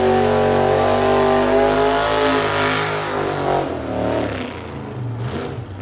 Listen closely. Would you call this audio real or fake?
real